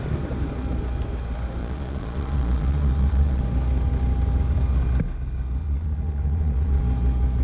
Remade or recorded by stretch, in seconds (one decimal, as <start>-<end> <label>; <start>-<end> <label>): 0.0-1.6 recorded; 1.6-3.4 remade; 3.4-5.6 recorded; 5.6-6.8 remade; 6.8-7.4 recorded